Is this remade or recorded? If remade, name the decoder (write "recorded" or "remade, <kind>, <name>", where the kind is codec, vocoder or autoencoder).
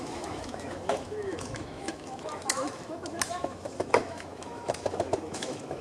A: remade, autoencoder, DAC-VAE